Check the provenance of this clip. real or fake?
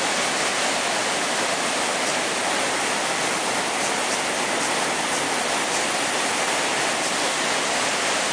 real